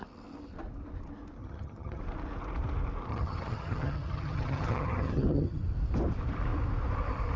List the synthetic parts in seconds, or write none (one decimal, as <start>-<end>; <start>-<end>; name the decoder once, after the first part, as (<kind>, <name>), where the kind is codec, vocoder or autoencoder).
1.4-2.0 (vocoder, HiFi-GAN); 3.1-5.6